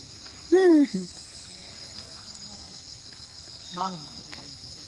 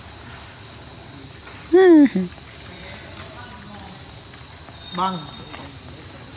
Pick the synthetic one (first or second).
first